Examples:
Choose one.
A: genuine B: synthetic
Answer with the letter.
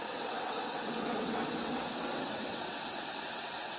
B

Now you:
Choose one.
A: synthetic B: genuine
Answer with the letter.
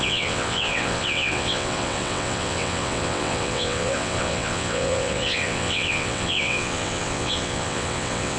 A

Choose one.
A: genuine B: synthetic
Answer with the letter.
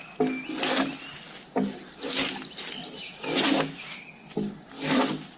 A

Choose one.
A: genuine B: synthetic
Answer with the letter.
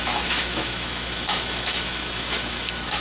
B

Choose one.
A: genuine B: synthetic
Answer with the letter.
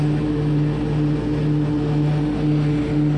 A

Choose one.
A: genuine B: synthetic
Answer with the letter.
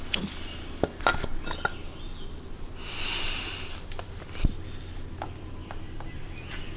A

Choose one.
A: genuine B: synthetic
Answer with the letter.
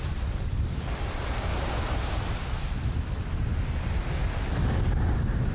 A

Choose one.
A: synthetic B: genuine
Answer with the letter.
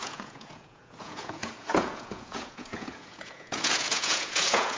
A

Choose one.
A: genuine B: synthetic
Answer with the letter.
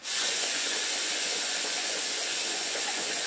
B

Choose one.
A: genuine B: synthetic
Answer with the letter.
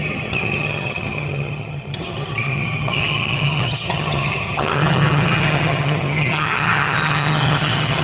B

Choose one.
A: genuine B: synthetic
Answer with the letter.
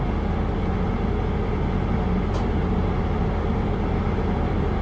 A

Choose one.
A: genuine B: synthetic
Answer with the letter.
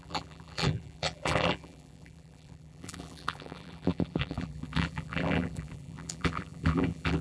B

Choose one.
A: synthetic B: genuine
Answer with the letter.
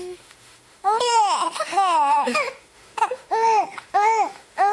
A